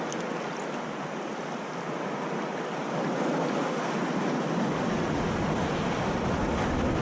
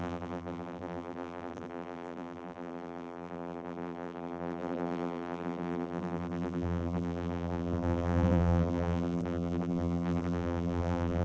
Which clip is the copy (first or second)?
second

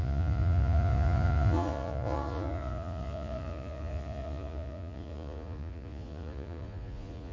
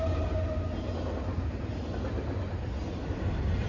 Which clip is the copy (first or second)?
first